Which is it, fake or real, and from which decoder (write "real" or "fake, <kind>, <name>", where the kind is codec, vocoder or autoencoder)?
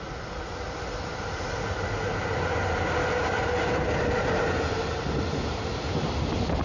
real